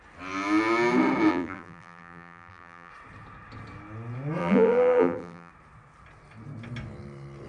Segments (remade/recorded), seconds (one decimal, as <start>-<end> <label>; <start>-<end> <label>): 0.0-1.3 recorded; 1.3-2.9 remade; 2.9-4.4 recorded; 4.4-5.5 remade; 5.5-7.5 recorded